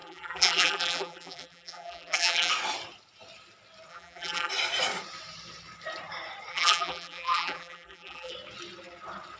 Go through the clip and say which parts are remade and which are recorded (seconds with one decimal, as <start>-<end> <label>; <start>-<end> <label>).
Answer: 0.0-2.5 remade; 2.5-3.9 recorded; 3.9-4.5 remade; 4.5-6.5 recorded; 6.5-8.3 remade; 8.3-9.4 recorded